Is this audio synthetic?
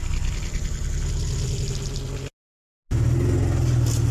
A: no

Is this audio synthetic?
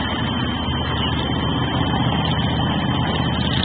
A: no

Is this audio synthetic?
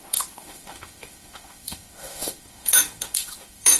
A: yes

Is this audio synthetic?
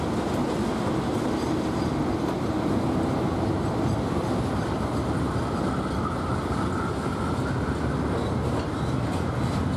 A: no